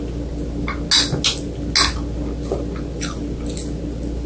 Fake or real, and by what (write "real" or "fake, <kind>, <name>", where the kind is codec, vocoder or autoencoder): real